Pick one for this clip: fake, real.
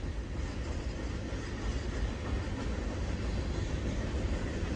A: real